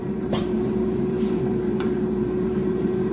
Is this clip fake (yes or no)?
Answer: yes